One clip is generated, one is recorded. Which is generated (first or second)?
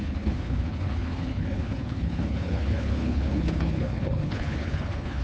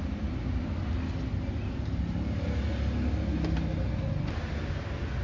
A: first